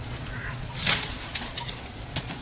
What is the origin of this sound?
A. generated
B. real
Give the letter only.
A